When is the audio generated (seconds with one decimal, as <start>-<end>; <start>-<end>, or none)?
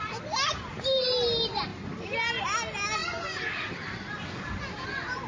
none